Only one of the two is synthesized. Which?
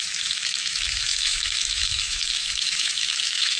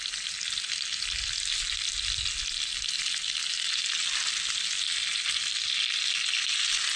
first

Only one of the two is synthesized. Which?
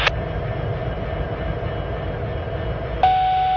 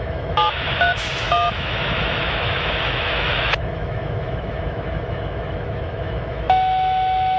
second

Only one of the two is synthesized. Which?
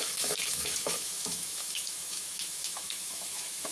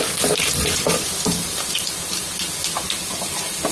first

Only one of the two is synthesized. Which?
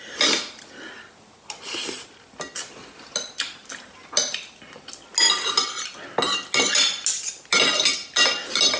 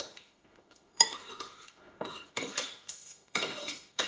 second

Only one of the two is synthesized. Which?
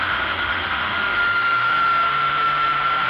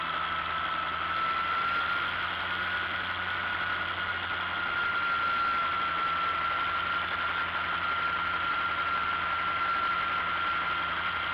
first